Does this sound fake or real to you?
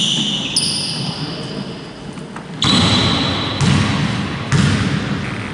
real